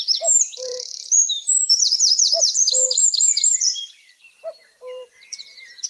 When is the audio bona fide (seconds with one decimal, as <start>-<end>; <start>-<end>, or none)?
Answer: none